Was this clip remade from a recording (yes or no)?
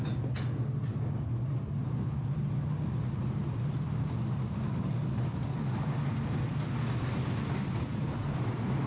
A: no